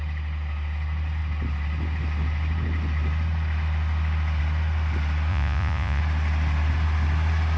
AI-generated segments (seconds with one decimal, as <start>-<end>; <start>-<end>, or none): 5.3-6.0